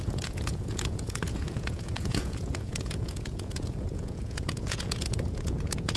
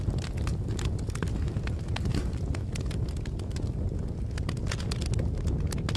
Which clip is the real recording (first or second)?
second